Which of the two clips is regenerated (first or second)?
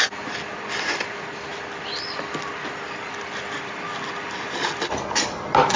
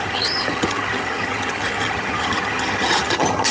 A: second